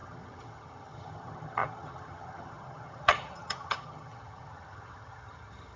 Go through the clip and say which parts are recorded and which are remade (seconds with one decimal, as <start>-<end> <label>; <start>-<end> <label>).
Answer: 0.0-5.8 remade